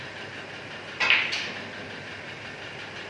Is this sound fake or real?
real